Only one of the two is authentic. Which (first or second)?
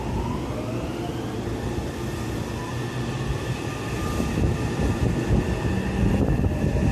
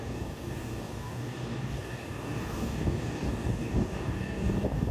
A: first